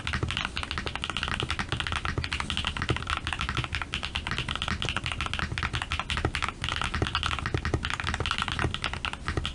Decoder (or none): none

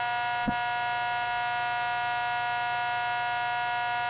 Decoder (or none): none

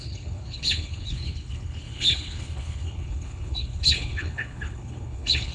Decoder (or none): codec, HILCodec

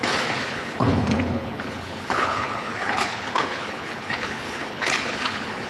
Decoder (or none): codec, HILCodec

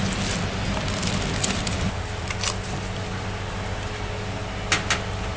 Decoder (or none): none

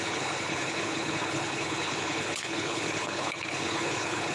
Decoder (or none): codec, HILCodec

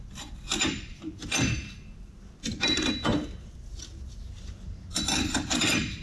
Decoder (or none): none